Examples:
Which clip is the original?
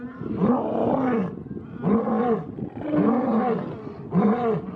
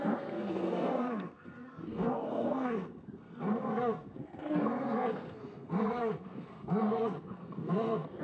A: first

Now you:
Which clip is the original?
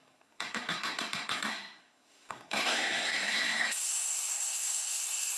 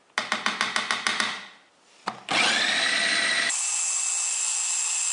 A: second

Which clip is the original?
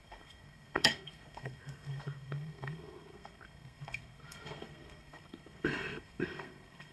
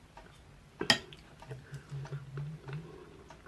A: second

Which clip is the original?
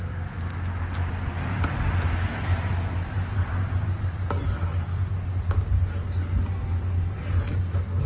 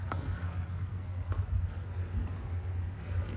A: first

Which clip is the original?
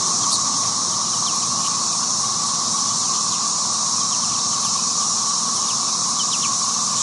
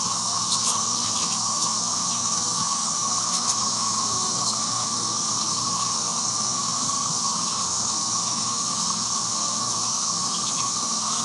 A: first